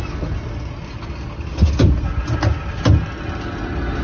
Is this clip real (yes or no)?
yes